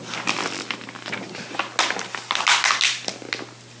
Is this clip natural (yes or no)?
yes